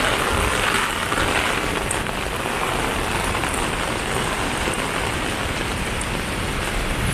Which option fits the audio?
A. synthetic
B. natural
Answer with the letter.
B